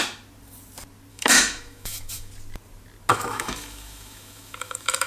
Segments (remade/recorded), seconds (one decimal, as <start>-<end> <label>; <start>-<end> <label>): 0.0-1.1 recorded; 1.1-2.3 remade; 2.3-3.1 recorded; 3.1-5.1 remade